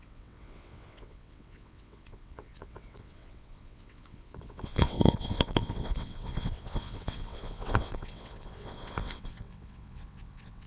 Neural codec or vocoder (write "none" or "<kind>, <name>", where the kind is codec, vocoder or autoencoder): vocoder, WaveNeXt